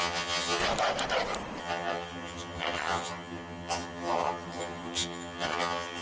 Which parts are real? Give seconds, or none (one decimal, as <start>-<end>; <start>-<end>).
0.6-1.6